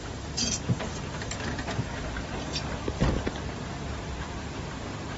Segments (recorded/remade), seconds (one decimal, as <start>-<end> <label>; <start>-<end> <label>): 0.0-3.1 remade; 3.1-5.2 recorded